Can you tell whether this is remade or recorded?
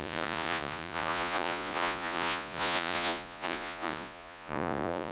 remade